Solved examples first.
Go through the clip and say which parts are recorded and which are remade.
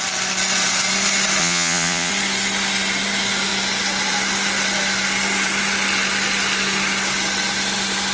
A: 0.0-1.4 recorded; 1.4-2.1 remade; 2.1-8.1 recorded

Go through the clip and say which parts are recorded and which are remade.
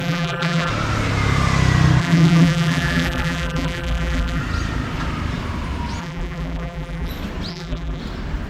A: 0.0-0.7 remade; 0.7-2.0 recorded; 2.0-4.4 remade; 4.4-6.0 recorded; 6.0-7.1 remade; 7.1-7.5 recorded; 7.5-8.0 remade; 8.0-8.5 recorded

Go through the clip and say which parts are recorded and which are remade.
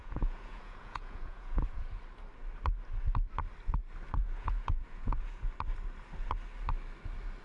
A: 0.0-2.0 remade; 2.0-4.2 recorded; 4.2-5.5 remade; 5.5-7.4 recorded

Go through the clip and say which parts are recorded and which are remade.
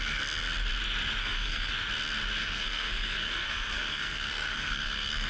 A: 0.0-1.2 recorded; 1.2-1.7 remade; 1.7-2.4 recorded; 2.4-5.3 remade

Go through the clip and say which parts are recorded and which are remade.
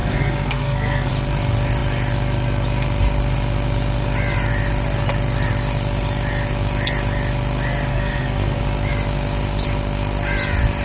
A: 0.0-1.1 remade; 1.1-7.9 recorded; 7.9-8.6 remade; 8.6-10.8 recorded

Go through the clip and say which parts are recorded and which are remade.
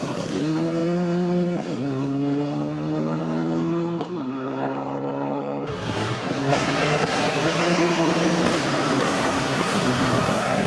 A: 0.0-8.1 remade; 8.1-9.0 recorded; 9.0-10.7 remade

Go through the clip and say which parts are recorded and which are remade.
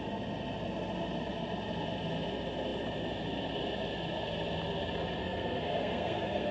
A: 0.0-5.2 recorded; 5.2-6.5 remade